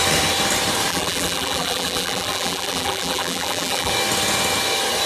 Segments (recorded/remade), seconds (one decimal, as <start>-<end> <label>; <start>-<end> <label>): 0.0-0.9 recorded; 0.9-3.9 remade; 3.9-5.1 recorded